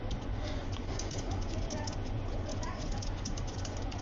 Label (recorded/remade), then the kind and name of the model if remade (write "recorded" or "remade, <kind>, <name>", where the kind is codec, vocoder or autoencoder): remade, vocoder, Vocos